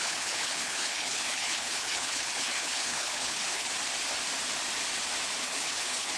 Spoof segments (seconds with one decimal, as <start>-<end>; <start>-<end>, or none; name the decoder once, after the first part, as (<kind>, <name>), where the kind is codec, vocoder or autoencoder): 0.0-3.7 (codec, HILCodec); 5.4-6.2